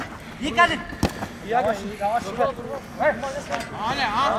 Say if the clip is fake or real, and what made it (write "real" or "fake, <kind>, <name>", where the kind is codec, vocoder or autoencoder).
real